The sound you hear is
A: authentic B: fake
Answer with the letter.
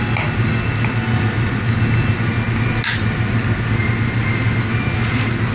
A